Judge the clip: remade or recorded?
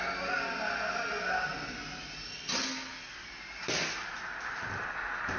recorded